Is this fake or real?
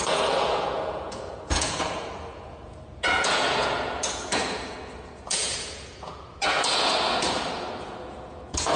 fake